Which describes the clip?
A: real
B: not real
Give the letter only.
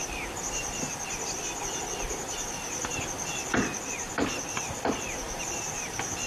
A